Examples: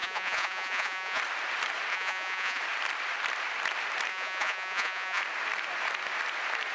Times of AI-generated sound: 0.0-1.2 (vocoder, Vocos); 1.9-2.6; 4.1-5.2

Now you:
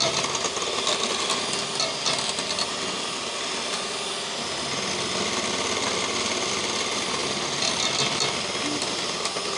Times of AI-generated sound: none